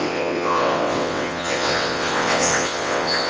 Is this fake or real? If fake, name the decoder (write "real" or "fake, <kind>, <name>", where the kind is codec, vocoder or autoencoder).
fake, vocoder, WaveNeXt